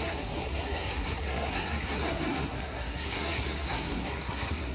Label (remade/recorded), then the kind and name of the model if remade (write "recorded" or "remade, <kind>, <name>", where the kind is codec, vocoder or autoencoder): remade, codec, SNAC